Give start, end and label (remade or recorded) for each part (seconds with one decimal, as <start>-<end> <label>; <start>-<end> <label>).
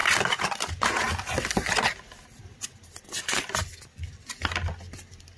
0.0-5.4 recorded